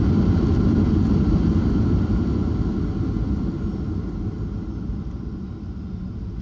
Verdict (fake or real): real